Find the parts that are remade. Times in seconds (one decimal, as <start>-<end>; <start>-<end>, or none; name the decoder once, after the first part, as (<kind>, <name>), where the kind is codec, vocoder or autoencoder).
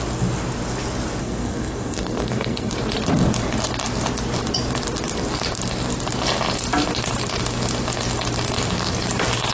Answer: 1.2-2.7 (codec, SNAC)